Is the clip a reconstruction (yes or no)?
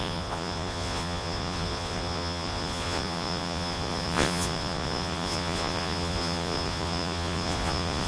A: yes